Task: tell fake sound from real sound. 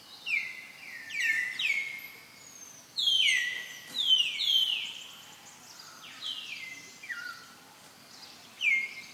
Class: real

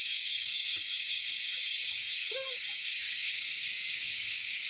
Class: fake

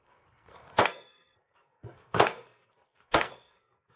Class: fake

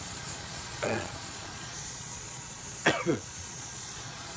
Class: fake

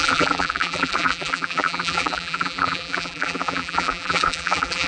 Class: fake